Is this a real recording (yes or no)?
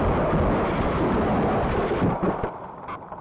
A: yes